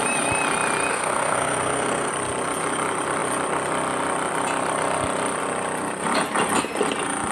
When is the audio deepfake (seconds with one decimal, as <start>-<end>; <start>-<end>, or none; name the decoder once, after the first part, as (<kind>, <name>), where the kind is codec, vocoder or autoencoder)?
0.9-2.1 (codec, SNAC)